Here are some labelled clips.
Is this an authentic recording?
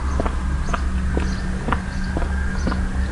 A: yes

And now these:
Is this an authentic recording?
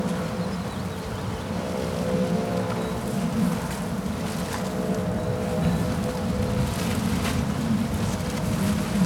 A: yes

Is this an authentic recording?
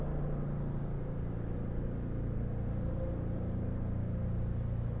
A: yes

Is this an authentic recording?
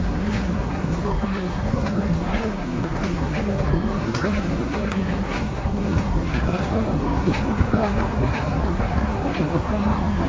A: no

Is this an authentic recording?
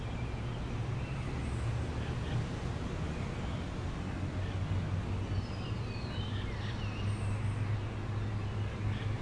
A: yes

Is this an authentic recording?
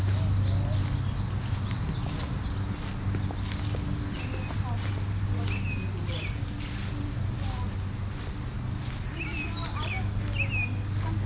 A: yes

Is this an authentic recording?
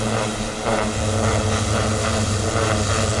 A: yes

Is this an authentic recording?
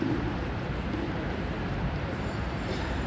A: no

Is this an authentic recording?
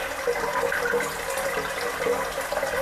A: yes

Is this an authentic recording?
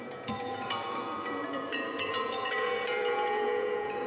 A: no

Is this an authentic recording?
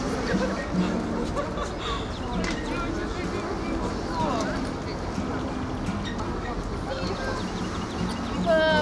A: yes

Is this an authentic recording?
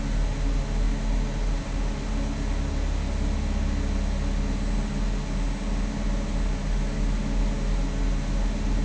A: yes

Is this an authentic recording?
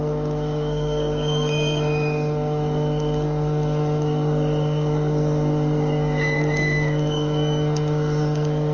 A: no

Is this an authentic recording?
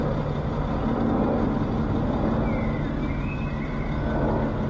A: yes